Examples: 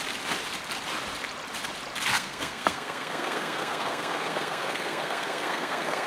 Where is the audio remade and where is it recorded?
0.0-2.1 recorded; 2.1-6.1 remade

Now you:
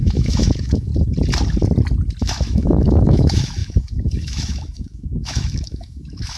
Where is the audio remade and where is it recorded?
0.0-0.9 remade; 0.9-2.2 recorded; 2.2-6.4 remade

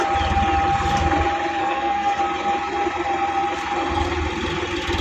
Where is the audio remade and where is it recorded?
0.0-1.6 recorded; 1.6-2.2 remade; 2.2-5.0 recorded

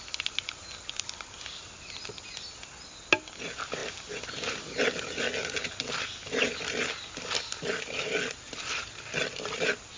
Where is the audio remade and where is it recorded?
0.0-10.0 recorded

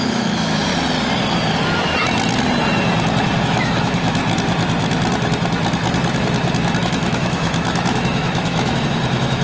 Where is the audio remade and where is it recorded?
0.0-0.7 remade; 0.7-3.4 recorded; 3.4-4.2 remade; 4.2-6.8 recorded; 6.8-9.4 remade

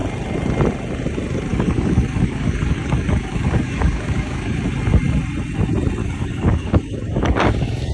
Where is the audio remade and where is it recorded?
0.0-1.5 recorded; 1.5-4.6 remade; 4.6-6.0 recorded; 6.0-7.9 remade

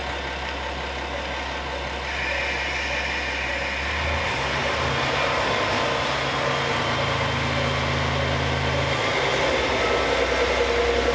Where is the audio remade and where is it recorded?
0.0-11.1 recorded

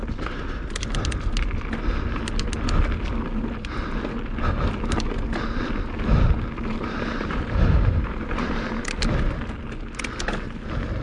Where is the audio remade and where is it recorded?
0.0-6.7 recorded; 6.7-8.7 remade; 8.7-11.0 recorded